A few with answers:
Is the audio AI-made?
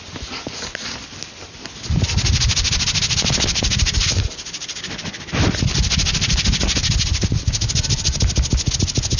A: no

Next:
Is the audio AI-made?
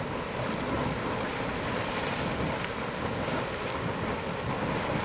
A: no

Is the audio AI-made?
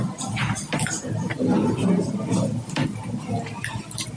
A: no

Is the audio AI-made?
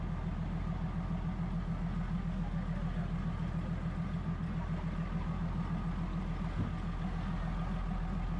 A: no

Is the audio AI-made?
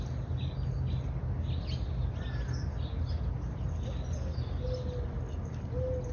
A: no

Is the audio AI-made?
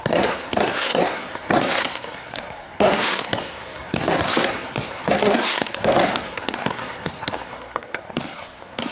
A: yes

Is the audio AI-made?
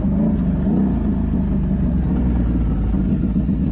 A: no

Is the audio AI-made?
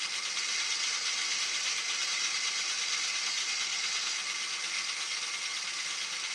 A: no